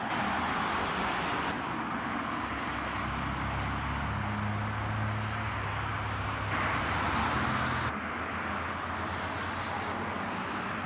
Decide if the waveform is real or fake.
real